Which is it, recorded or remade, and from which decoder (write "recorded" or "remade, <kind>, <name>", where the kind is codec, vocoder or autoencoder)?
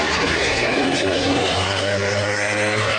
remade, codec, SNAC